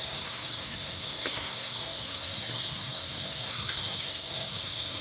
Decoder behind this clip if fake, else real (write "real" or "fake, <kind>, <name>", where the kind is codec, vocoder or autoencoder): fake, codec, SNAC